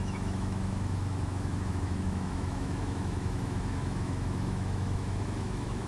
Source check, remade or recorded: remade